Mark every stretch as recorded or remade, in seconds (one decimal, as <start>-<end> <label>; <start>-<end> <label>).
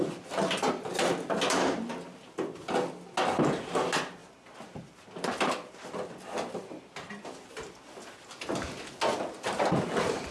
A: 0.0-10.3 recorded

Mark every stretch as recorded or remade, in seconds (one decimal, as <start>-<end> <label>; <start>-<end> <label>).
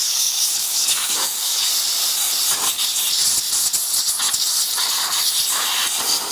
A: 0.0-1.7 remade; 1.7-6.3 recorded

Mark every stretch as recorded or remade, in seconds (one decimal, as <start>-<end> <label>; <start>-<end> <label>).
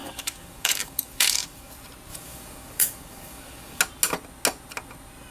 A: 0.0-1.7 remade; 1.7-2.1 recorded; 2.1-3.8 remade; 3.8-5.3 recorded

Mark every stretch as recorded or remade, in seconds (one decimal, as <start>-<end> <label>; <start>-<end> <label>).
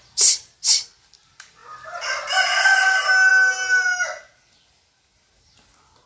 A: 0.0-6.1 recorded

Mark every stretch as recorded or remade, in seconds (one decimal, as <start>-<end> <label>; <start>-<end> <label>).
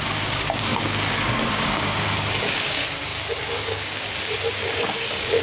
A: 0.0-5.4 remade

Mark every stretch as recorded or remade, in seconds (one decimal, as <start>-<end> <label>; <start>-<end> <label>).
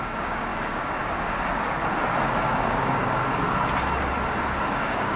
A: 0.0-1.8 remade; 1.8-2.5 recorded; 2.5-3.2 remade; 3.2-4.6 recorded; 4.6-5.2 remade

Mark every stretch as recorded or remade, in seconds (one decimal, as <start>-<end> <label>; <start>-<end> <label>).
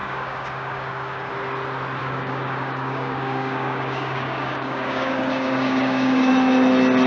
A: 0.0-1.3 remade; 1.3-2.0 recorded; 2.0-6.3 remade; 6.3-7.1 recorded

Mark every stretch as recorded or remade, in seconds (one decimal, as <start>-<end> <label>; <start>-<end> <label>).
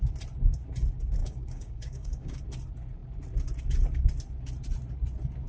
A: 0.0-1.2 recorded; 1.2-2.4 remade; 2.4-5.5 recorded